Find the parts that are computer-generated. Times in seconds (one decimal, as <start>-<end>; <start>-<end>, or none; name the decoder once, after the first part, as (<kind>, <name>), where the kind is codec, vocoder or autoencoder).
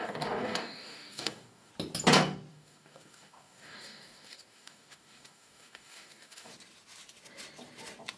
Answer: 0.0-1.7 (codec, DAC); 2.5-6.5